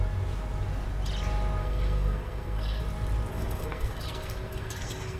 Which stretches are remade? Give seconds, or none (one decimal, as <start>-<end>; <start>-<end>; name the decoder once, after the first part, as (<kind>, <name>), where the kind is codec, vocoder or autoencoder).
1.6-2.8 (codec, SNAC); 3.3-5.2